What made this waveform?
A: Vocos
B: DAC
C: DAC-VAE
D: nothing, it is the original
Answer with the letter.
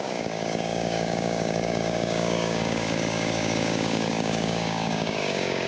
B